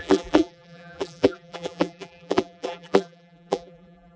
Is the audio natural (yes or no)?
no